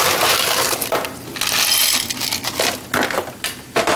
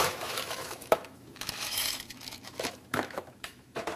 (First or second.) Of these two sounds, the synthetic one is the second